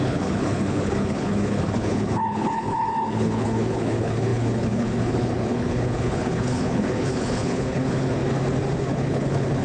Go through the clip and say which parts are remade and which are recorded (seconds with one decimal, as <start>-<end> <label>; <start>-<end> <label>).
0.0-8.2 remade; 8.2-8.8 recorded; 8.8-9.6 remade